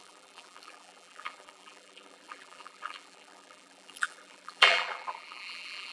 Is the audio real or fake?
fake